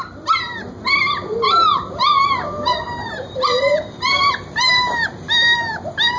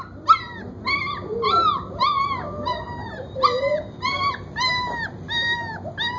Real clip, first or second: second